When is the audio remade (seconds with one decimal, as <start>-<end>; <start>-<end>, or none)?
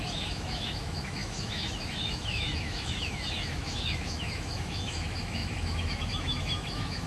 0.0-7.1